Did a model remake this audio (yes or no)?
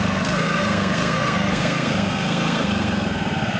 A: yes